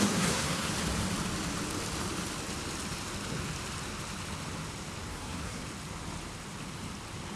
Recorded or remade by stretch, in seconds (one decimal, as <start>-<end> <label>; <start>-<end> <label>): 0.0-0.7 remade; 0.7-5.1 recorded; 5.1-5.6 remade; 5.6-7.4 recorded